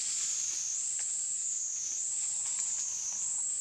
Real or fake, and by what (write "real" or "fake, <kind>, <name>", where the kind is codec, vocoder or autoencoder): fake, vocoder, BigVGAN v2